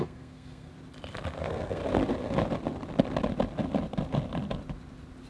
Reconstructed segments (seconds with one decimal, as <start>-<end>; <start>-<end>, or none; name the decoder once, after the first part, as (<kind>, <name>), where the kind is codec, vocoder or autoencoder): 0.0-0.7 (codec, SNAC); 1.4-1.8